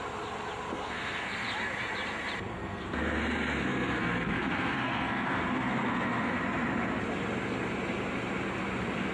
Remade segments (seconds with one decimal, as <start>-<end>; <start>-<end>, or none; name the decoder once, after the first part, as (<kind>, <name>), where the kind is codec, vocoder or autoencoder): 0.7-1.5 (codec, SNAC); 2.5-6.4